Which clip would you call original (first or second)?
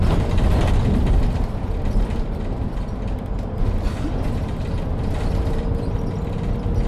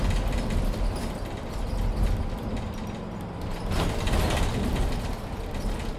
second